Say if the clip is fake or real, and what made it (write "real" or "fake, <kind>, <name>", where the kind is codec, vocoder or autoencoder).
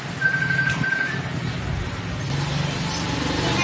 real